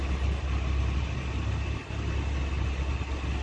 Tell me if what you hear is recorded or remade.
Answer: recorded